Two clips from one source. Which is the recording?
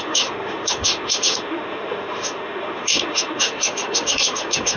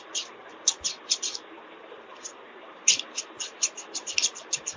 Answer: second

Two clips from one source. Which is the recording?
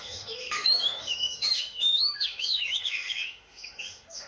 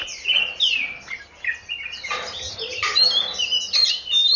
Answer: second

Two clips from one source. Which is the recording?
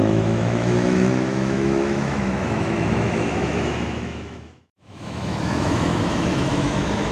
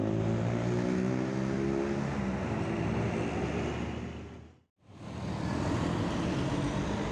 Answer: second